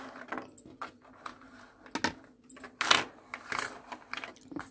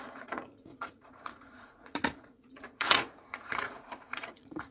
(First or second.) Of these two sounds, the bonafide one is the first